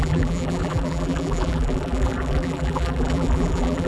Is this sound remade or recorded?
remade